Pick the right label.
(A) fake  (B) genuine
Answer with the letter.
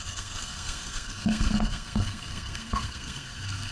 A